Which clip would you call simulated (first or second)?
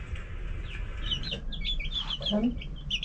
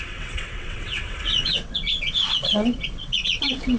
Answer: second